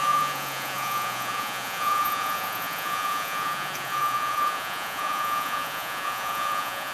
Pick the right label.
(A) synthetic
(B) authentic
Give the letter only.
A